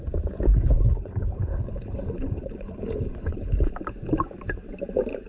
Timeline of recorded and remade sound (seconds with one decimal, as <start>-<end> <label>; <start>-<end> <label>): 0.0-0.5 recorded; 0.5-3.7 remade; 3.7-5.3 recorded